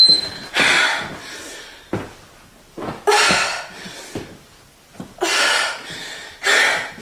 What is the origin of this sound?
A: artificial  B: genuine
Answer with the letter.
B